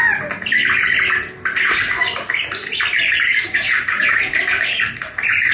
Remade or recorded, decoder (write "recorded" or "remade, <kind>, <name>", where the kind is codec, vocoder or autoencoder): recorded